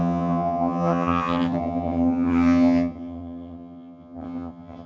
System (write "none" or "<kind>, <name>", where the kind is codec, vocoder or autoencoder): vocoder, HiFi-GAN